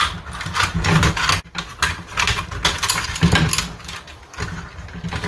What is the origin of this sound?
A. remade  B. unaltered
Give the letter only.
B